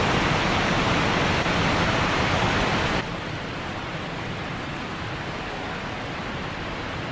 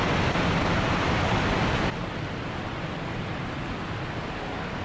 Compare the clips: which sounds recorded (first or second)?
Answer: second